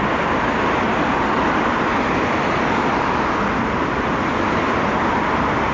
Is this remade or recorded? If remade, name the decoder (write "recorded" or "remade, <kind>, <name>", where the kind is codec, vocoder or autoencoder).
recorded